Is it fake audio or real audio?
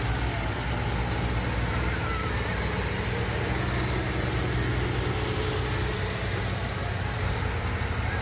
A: real